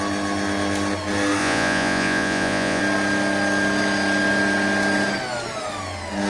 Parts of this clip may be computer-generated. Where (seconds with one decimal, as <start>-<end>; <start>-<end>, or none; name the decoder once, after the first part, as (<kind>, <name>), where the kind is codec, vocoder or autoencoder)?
1.4-2.8 (vocoder, Vocos)